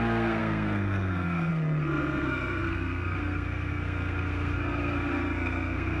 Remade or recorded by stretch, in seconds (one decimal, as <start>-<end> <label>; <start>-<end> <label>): 0.0-6.0 remade